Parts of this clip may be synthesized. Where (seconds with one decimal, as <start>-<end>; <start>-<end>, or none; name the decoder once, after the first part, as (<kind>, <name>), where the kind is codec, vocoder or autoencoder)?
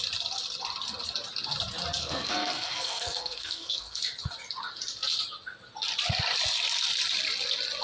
2.0-4.0 (codec, SNAC)